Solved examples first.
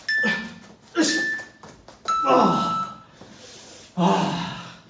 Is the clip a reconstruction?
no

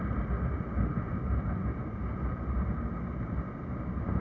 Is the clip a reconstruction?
no